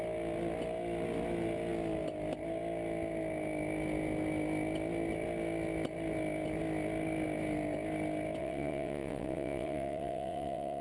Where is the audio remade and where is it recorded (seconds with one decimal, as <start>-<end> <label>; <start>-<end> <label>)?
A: 0.0-8.4 recorded; 8.4-10.8 remade